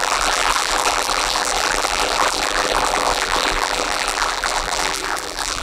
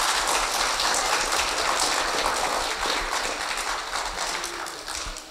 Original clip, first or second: second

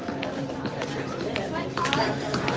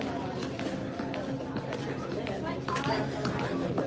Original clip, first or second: second